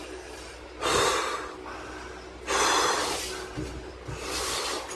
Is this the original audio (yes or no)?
yes